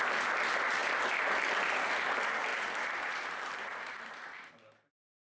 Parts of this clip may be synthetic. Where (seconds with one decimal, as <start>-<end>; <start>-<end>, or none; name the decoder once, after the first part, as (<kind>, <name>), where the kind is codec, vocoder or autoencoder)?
2.5-4.5 (vocoder, BigVGAN v2)